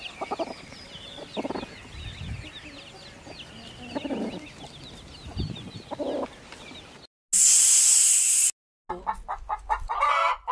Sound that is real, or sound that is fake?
real